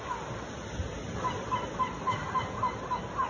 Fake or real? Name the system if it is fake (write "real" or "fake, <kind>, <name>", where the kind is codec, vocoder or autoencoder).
real